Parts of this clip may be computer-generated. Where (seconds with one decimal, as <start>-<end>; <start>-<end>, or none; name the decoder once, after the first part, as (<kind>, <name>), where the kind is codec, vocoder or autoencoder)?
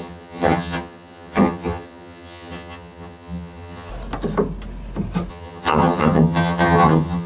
0.0-3.9 (vocoder, HiFi-GAN); 5.3-7.3